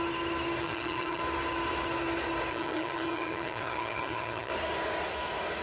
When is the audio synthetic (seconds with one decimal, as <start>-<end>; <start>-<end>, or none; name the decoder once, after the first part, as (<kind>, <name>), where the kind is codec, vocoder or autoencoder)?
0.6-1.2 (vocoder, HiFi-GAN); 2.5-4.5